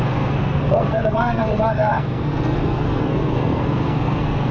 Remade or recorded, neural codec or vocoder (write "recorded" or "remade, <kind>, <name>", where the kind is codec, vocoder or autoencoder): remade, codec, SNAC